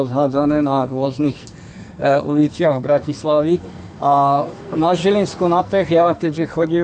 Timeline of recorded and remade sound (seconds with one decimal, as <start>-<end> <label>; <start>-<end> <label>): 0.0-5.0 remade; 5.0-5.6 recorded; 5.6-6.8 remade